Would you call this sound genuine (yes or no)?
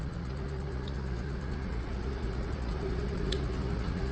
no